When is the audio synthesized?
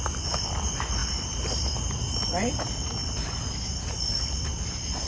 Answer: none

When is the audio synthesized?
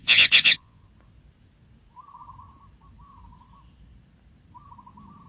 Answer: 0.0-0.8 (vocoder, Vocos)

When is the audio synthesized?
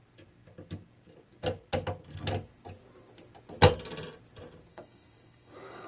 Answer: 4.7-5.9 (codec, DAC)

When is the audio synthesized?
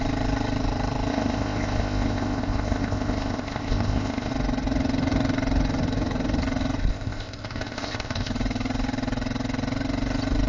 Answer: 1.1-4.3 (codec, ZipCodec); 6.9-8.3